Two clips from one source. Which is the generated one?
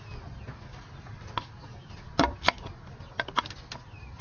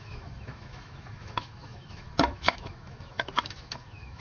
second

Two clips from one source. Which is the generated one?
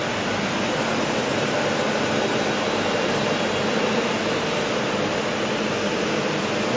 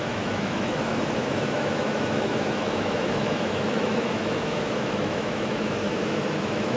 second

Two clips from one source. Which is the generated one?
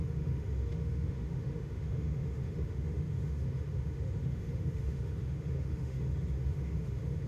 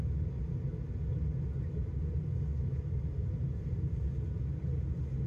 first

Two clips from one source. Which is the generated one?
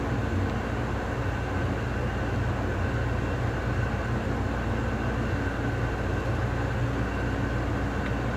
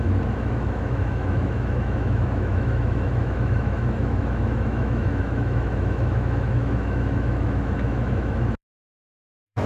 second